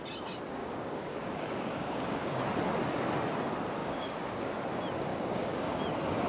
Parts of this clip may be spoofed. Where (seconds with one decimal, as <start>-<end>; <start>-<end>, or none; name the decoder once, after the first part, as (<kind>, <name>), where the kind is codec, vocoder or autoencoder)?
0.6-2.4 (codec, DAC); 3.8-4.5; 5.1-5.8